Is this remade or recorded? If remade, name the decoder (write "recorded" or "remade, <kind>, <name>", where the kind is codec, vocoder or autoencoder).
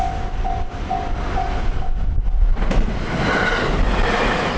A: recorded